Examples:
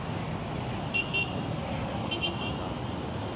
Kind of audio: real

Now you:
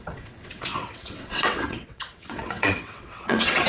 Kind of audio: fake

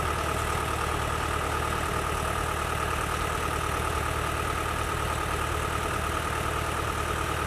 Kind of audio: real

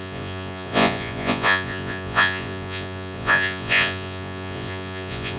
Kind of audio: fake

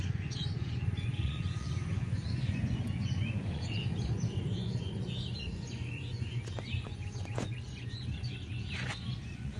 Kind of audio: fake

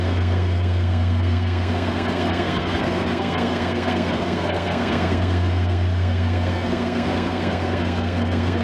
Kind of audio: fake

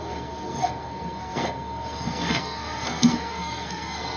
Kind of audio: fake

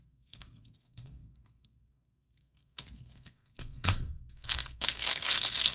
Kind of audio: fake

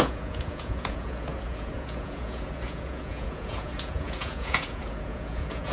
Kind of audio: fake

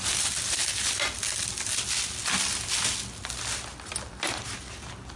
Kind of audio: real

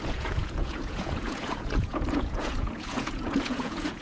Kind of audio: fake